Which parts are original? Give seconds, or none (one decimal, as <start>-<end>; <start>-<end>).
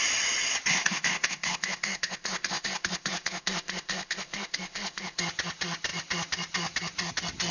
0.0-0.7; 5.2-7.5